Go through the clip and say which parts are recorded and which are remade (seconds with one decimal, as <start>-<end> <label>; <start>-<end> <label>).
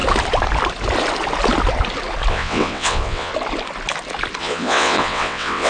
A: 0.0-2.3 recorded; 2.3-3.3 remade; 3.3-4.4 recorded; 4.4-5.7 remade